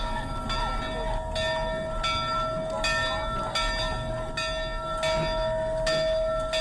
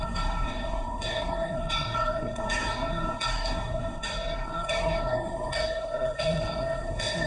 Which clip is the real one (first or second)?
first